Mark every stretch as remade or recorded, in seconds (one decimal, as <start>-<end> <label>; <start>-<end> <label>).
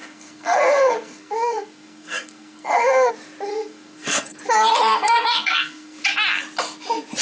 0.0-3.1 remade; 3.1-3.5 recorded; 3.5-4.4 remade; 4.4-4.9 recorded; 4.9-6.0 remade; 6.0-7.2 recorded